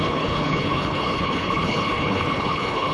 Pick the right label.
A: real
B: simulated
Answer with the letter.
B